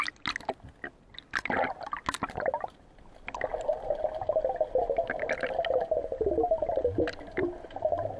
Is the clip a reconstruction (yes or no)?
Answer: no